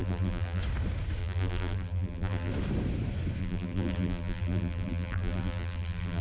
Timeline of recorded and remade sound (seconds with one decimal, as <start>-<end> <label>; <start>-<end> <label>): 0.0-0.6 remade; 0.6-1.2 recorded; 1.2-2.5 remade; 2.5-3.4 recorded; 3.4-6.2 remade